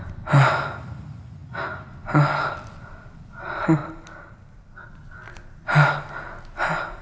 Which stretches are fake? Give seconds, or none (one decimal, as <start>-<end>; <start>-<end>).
none